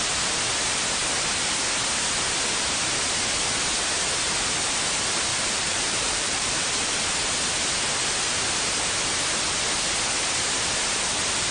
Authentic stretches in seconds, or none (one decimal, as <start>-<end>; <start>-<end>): 0.0-5.3; 6.9-11.5

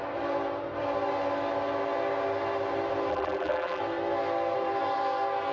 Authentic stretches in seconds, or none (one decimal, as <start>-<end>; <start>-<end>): 0.0-3.1; 3.8-5.5

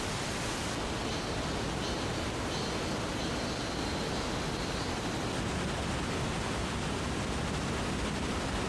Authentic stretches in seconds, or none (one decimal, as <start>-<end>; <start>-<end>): 0.0-8.7